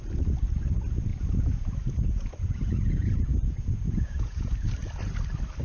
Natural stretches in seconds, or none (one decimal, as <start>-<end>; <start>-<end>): 0.0-1.1; 4.5-5.6